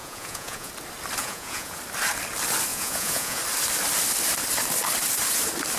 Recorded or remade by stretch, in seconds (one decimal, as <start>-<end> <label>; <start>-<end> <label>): 0.0-0.7 remade; 0.7-1.2 recorded; 1.2-1.8 remade; 1.8-2.7 recorded; 2.7-3.4 remade; 3.4-5.8 recorded